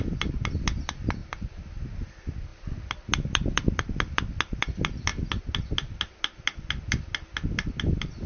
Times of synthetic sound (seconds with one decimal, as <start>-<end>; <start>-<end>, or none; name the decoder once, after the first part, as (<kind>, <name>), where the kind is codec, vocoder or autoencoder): none

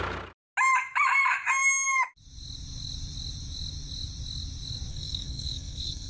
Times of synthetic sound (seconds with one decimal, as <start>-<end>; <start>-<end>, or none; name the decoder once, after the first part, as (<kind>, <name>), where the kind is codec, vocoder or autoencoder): 4.9-6.1 (codec, SNAC)

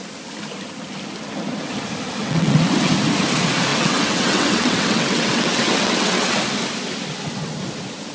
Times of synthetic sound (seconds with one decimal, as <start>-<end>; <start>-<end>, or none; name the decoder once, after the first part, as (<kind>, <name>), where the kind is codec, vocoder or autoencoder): 2.2-2.9 (vocoder, WaveNeXt); 3.7-6.4